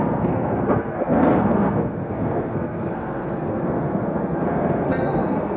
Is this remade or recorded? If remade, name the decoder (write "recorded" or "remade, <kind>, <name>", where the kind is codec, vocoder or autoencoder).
remade, codec, SNAC